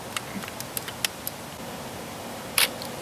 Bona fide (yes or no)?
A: yes